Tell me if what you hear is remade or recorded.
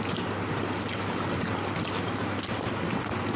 recorded